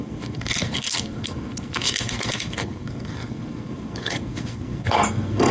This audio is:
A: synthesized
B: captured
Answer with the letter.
A